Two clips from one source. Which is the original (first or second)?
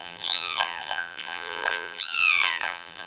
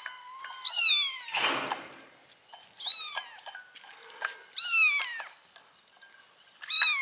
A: second